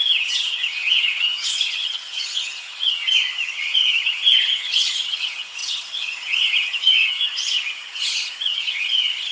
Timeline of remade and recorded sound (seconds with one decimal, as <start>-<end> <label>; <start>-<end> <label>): 0.0-9.3 remade